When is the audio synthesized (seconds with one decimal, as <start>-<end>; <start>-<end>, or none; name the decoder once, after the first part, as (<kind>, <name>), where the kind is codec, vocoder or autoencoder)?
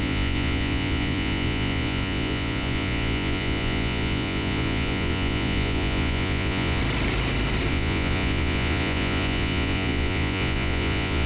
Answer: 0.0-6.8 (vocoder, Vocos); 7.7-11.3